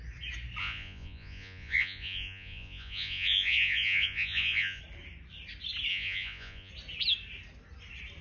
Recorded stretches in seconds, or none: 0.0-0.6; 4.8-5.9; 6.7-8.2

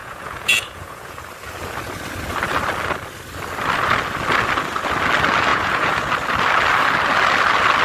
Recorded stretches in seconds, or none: 1.2-5.5; 6.1-7.8

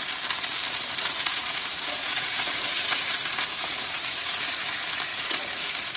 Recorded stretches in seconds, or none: 0.0-1.0; 4.6-5.1

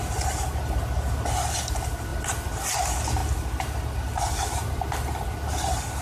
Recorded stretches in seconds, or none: 0.0-6.0

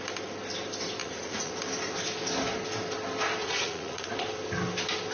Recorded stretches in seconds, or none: 0.0-1.0; 1.5-3.4; 4.1-5.1

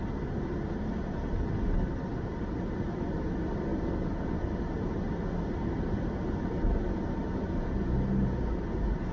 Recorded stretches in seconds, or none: 0.0-9.1